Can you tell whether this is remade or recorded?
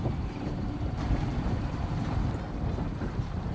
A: remade